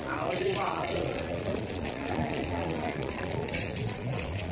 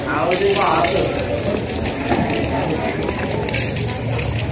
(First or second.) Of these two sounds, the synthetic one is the first